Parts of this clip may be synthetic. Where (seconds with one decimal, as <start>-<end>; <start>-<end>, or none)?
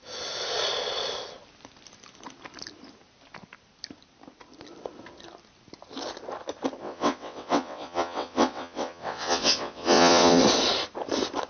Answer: 6.8-10.4